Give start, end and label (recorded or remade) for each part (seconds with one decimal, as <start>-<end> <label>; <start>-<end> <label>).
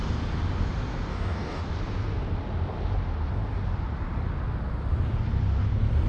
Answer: 0.0-1.1 recorded; 1.1-1.6 remade; 1.6-6.1 recorded